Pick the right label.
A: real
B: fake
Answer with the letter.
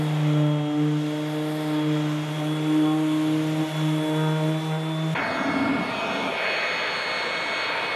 A